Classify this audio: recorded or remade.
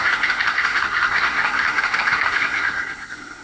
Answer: remade